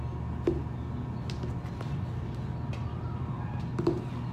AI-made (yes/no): no